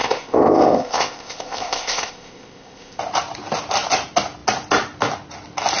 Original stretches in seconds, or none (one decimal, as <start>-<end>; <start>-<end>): 3.0-5.8